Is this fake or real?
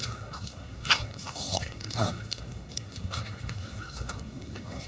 fake